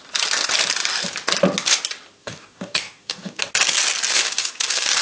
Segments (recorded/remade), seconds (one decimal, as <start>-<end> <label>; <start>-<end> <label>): 0.0-2.2 recorded; 2.2-3.4 remade; 3.4-4.1 recorded; 4.1-5.0 remade